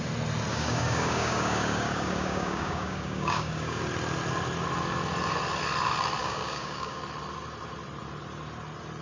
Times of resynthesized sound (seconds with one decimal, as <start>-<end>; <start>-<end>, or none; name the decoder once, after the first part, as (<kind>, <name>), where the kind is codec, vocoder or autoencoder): 0.5-3.8 (codec, DAC); 6.2-7.0